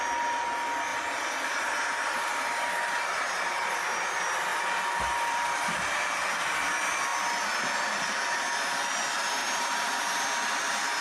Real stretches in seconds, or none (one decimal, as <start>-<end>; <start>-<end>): 0.0-0.9; 3.8-4.5; 5.9-9.4; 10.0-11.0